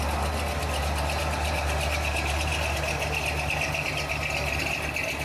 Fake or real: real